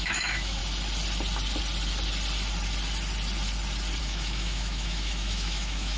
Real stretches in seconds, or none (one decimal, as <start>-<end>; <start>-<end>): 0.6-4.0